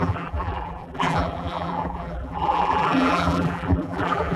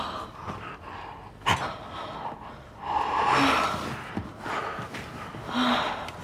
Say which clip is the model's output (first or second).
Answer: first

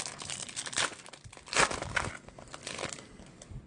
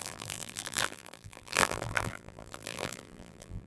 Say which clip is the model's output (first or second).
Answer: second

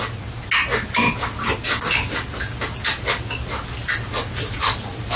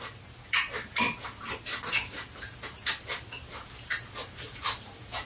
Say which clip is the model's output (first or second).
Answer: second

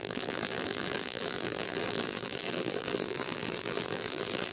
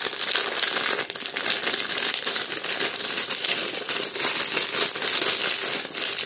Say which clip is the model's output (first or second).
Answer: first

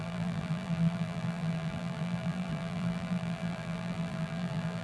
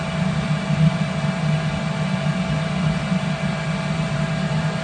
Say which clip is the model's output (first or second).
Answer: first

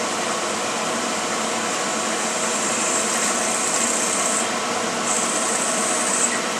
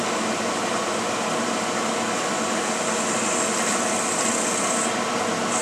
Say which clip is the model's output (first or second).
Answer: first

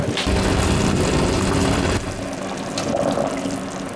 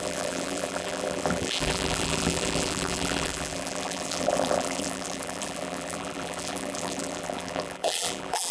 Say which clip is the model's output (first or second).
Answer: second